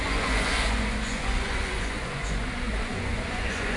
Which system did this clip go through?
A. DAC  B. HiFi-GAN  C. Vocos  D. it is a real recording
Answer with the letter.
C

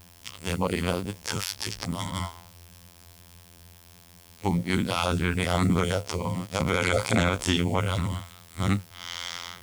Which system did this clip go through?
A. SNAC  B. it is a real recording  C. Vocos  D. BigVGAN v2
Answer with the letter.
D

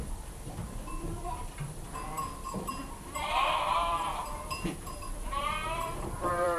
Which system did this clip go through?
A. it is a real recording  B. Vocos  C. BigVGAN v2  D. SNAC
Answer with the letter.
C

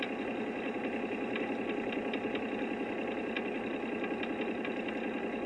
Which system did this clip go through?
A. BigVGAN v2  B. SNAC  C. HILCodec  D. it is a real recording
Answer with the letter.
D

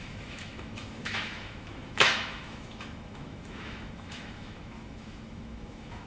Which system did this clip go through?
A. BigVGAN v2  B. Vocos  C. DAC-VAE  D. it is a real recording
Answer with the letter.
C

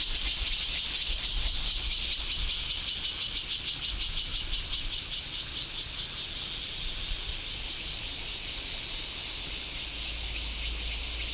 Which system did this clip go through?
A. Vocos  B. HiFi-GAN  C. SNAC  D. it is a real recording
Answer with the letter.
D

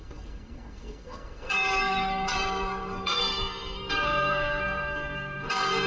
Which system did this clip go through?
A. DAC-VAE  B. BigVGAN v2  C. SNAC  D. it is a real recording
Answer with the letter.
C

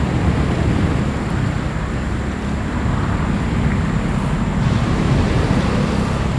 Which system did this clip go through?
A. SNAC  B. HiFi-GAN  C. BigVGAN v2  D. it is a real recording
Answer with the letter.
D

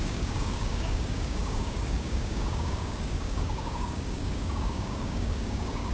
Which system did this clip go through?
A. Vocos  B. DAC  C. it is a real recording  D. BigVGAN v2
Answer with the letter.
B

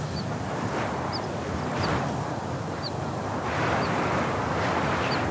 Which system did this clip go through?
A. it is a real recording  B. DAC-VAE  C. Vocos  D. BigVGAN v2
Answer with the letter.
A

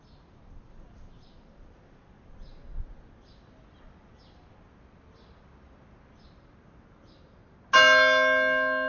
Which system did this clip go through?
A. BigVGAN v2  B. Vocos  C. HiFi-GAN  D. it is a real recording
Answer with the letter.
D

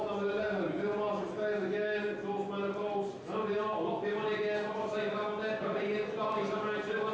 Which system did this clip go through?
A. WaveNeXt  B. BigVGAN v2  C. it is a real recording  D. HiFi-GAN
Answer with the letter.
C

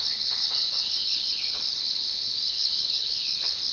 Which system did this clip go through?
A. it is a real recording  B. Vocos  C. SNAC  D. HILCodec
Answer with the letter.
D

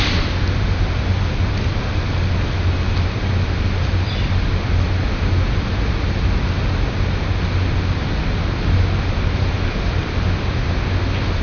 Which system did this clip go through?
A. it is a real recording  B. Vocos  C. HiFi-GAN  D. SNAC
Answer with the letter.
A